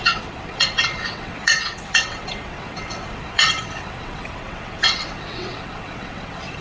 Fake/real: fake